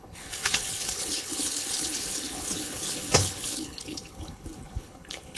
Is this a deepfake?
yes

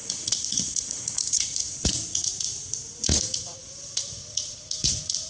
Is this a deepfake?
yes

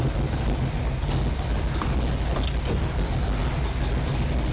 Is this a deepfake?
no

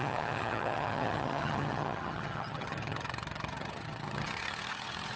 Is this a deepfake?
yes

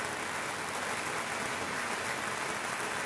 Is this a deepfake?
no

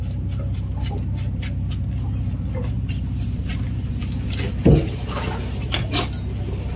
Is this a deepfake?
no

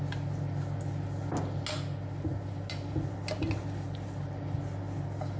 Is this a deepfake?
no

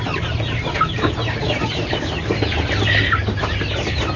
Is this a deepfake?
no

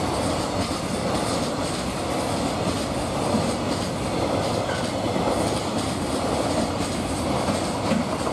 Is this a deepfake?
no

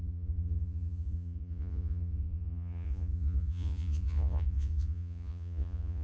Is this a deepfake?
yes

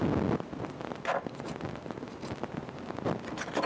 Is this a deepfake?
no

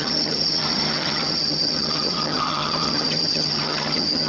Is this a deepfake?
yes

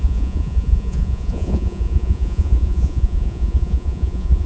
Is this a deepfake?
yes